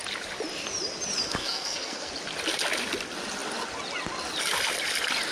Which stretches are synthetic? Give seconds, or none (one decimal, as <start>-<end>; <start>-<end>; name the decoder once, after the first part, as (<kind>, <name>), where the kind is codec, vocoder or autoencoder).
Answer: 1.4-2.1 (codec, SNAC)